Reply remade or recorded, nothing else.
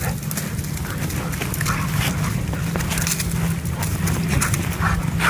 recorded